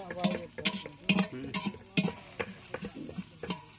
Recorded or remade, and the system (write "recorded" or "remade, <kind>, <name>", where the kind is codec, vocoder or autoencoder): recorded